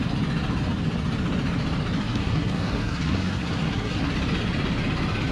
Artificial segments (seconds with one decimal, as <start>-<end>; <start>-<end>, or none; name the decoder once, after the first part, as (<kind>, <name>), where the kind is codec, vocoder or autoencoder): 2.0-4.1 (codec, SNAC)